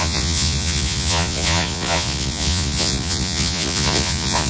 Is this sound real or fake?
fake